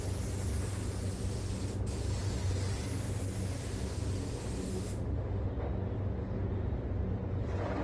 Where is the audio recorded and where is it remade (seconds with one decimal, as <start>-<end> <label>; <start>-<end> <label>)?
0.0-4.7 recorded; 4.7-5.5 remade; 5.5-7.8 recorded